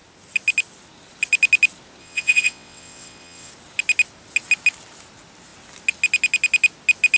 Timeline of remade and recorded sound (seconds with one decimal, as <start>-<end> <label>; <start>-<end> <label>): 0.0-2.0 recorded; 2.0-3.5 remade; 3.5-7.2 recorded